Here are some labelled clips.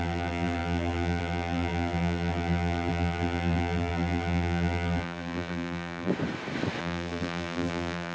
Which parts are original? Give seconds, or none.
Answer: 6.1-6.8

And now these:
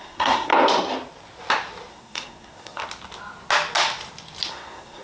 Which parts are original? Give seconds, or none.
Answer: 0.5-1.9; 2.8-4.5

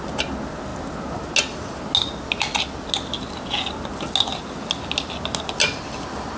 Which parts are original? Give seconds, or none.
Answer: 0.0-6.4

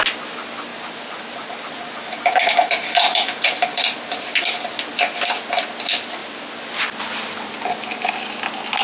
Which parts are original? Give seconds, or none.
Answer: 0.0-0.7; 4.2-8.8

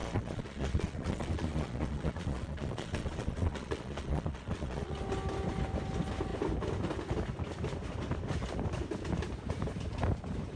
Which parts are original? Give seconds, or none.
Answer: 5.0-10.6

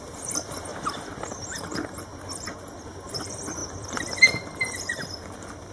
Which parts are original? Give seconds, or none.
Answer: 0.7-1.5; 2.1-3.2

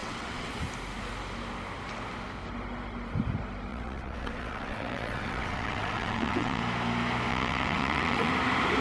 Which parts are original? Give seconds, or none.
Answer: 0.5-3.7; 6.6-7.3; 8.3-8.8